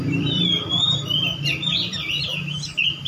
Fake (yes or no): yes